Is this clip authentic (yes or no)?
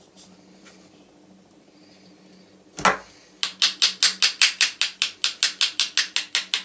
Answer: yes